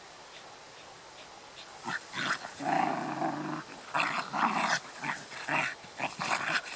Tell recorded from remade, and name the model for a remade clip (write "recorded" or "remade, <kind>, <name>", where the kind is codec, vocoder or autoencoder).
recorded